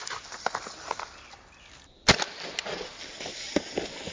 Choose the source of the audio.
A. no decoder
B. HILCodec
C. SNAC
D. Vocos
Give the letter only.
A